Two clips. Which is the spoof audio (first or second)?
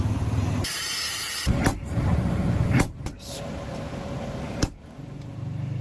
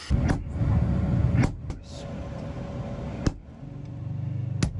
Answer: first